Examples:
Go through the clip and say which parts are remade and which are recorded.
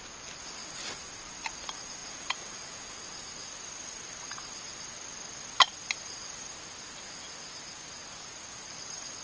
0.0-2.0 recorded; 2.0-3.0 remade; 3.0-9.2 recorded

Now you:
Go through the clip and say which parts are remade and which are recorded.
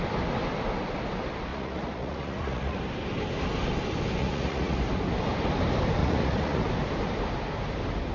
0.0-1.5 recorded; 1.5-2.8 remade; 2.8-4.2 recorded; 4.2-4.8 remade; 4.8-6.0 recorded; 6.0-6.7 remade; 6.7-8.1 recorded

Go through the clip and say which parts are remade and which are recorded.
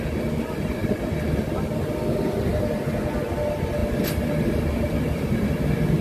0.0-6.0 recorded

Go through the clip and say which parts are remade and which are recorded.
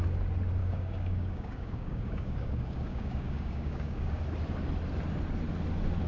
0.0-0.6 recorded; 0.6-4.2 remade; 4.2-6.1 recorded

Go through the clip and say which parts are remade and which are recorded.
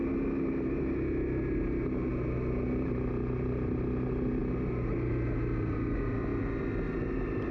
0.0-7.5 recorded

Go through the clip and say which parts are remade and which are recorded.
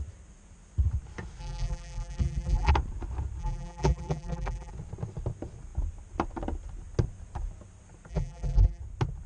0.0-1.4 recorded; 1.4-2.7 remade; 2.7-3.4 recorded; 3.4-4.7 remade; 4.7-8.1 recorded; 8.1-8.8 remade; 8.8-9.3 recorded